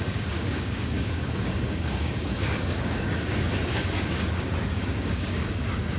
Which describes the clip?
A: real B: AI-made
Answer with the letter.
B